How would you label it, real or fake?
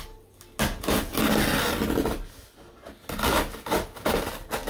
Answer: real